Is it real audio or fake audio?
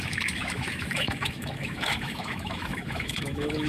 fake